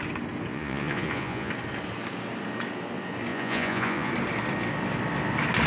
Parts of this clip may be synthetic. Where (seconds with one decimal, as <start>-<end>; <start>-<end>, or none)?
0.5-1.5; 3.3-4.1